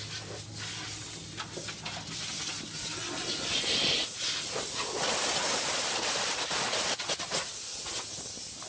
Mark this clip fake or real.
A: real